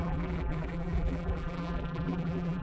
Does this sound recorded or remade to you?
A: remade